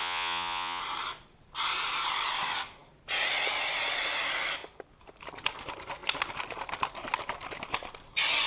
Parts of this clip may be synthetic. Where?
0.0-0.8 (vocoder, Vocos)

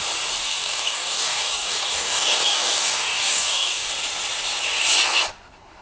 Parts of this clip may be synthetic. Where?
0.4-3.9 (codec, DAC)